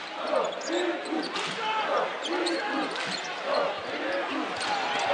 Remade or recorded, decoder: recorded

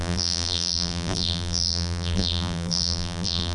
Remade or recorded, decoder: remade, vocoder, BigVGAN v2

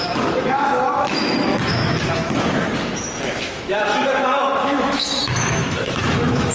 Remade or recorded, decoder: remade, autoencoder, DAC-VAE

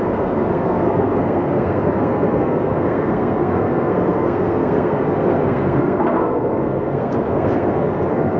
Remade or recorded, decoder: remade, codec, SNAC